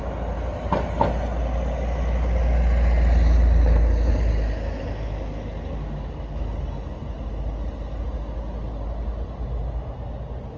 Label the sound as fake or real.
real